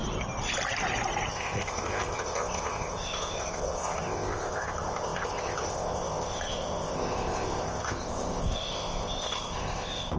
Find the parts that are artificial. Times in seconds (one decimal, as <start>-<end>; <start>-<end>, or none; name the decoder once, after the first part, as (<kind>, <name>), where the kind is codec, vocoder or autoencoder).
1.3-10.2 (codec, ZipCodec)